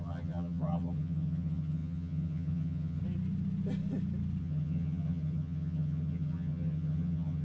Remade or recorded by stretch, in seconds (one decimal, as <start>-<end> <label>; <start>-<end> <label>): 0.0-3.0 remade; 3.0-4.4 recorded; 4.4-7.4 remade